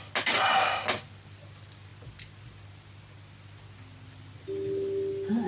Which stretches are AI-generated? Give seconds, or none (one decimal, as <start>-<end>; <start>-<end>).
none